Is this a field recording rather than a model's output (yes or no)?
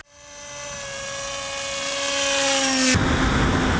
yes